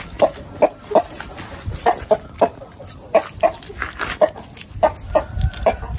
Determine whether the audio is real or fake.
real